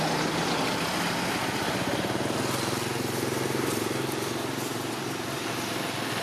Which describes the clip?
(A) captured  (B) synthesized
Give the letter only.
A